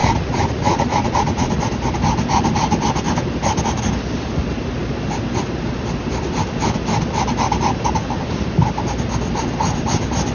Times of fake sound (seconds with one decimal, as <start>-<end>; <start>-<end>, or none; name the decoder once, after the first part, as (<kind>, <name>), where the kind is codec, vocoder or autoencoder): 0.0-1.6 (vocoder, Vocos)